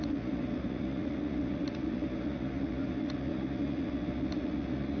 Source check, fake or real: fake